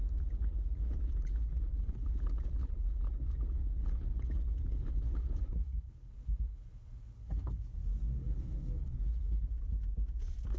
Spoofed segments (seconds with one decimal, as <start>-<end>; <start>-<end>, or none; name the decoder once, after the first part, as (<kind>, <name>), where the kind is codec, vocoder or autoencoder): 0.4-2.1 (codec, HILCodec); 2.6-7.6; 8.2-9.5